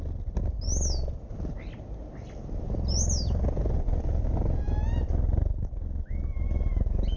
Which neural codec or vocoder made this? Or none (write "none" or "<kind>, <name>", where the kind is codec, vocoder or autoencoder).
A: none